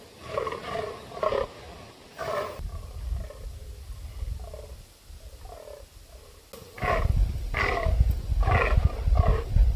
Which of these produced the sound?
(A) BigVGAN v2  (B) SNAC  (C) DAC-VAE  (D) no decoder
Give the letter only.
D